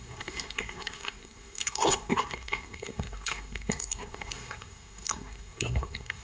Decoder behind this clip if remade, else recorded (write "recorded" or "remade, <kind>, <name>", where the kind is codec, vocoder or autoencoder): remade, codec, SNAC